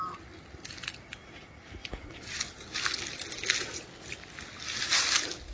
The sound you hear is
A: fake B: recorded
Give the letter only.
B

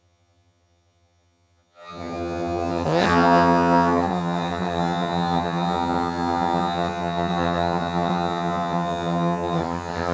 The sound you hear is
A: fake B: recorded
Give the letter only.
A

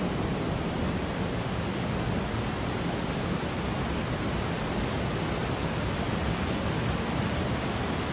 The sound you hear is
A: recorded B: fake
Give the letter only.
A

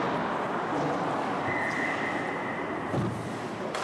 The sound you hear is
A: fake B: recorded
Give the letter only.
B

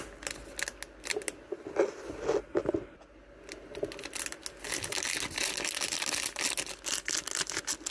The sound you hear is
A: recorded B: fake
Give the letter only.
A